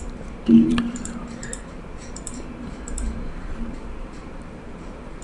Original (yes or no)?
no